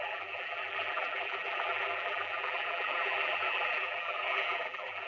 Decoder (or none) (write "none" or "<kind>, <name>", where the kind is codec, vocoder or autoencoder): vocoder, BigVGAN v2